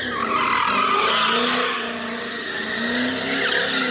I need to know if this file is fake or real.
real